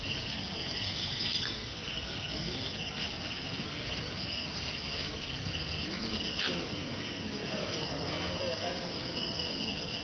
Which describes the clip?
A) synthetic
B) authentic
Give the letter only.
A